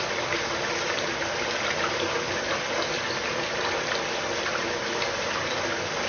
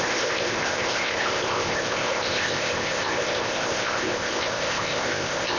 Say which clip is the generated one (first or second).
second